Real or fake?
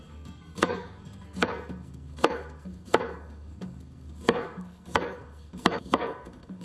fake